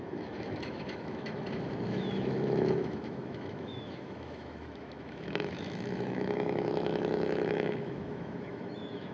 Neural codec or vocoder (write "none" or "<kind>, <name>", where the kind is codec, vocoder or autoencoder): autoencoder, DAC-VAE